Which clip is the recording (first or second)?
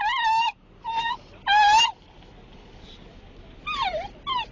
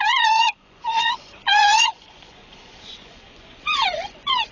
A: first